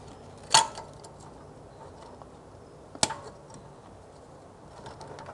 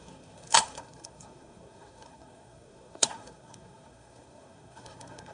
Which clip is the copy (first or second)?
second